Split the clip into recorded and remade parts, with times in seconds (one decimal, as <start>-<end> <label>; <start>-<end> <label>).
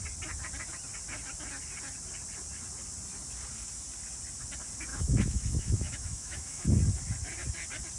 0.0-4.9 recorded; 4.9-6.8 remade; 6.8-8.0 recorded